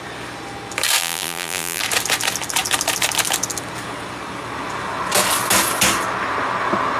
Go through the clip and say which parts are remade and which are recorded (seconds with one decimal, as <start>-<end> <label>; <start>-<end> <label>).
0.0-1.0 recorded; 1.0-1.8 remade; 1.8-7.0 recorded